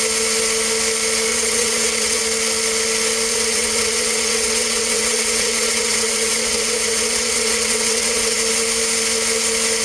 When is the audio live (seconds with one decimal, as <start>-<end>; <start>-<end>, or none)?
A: 0.0-1.3; 2.2-3.3; 8.4-9.8